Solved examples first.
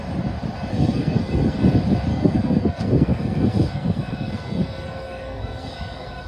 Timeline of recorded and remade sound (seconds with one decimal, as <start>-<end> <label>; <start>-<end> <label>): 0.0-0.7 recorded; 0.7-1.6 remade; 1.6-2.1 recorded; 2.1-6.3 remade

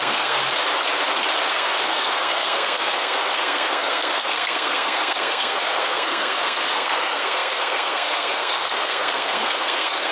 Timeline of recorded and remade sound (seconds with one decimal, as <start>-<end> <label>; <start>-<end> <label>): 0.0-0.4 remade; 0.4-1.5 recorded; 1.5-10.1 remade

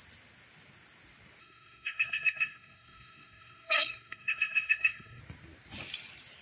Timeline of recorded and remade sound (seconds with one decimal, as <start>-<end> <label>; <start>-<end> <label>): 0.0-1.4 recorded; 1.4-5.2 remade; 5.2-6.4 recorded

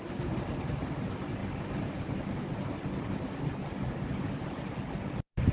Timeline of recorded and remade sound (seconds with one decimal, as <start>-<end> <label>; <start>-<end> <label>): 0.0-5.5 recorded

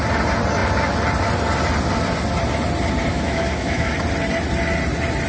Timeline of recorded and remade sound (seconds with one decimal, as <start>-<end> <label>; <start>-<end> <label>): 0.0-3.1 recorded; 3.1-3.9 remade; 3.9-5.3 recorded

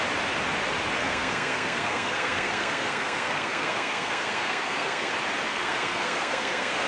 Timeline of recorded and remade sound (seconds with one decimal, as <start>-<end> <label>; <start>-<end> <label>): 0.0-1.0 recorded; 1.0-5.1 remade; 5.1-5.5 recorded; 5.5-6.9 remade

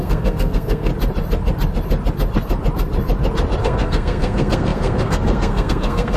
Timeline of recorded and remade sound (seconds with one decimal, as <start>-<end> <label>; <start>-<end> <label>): 0.0-0.9 remade; 0.9-3.6 recorded; 3.6-6.2 remade